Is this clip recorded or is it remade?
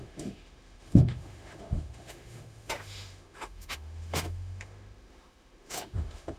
remade